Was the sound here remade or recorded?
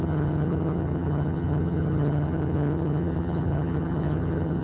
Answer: remade